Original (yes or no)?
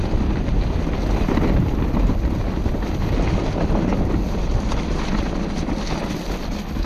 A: yes